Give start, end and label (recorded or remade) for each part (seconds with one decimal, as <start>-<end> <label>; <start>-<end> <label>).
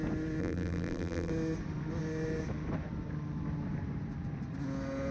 0.0-0.4 recorded; 0.4-1.3 remade; 1.3-5.1 recorded